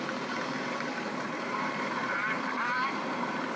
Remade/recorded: remade